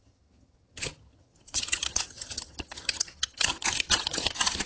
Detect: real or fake fake